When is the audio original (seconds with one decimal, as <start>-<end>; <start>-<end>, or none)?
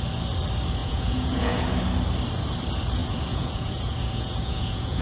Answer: 0.0-0.8; 1.7-3.0